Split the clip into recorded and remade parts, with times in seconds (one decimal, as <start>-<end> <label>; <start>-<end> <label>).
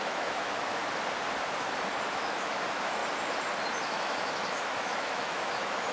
0.0-0.8 remade; 0.8-2.1 recorded; 2.1-3.0 remade; 3.0-3.8 recorded; 3.8-5.9 remade